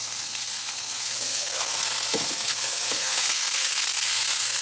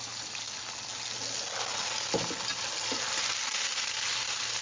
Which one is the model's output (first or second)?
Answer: first